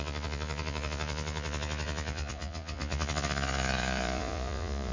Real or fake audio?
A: fake